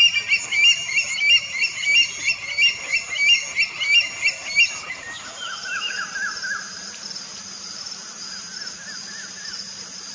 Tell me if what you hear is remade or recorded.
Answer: recorded